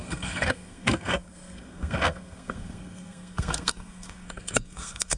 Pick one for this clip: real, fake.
fake